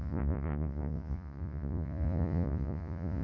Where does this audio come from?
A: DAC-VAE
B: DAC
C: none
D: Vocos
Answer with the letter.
D